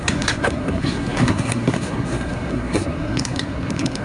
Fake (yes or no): yes